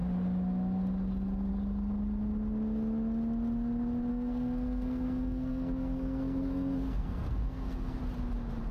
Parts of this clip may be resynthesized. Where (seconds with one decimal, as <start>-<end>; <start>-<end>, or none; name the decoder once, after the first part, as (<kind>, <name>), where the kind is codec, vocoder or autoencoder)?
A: 4.1-8.0 (codec, SNAC)